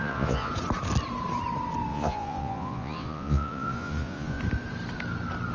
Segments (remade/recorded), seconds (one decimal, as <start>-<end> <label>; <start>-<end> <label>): 0.0-0.5 remade; 0.5-1.9 recorded; 1.9-4.4 remade; 4.4-5.5 recorded